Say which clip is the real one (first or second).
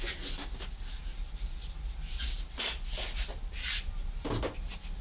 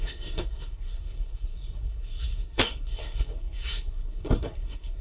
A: first